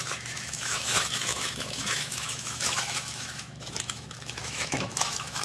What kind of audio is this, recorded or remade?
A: remade